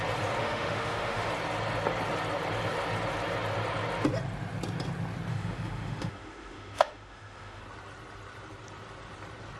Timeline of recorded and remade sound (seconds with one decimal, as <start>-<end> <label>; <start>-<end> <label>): 0.0-0.4 recorded; 0.4-1.3 remade; 1.3-5.3 recorded; 5.3-7.6 remade; 7.6-9.6 recorded